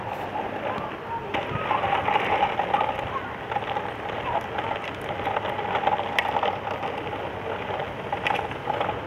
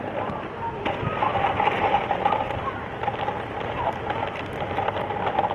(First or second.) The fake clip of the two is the second